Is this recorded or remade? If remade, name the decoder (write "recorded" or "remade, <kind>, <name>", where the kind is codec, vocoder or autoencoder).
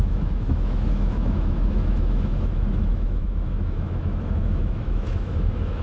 remade, autoencoder, DAC-VAE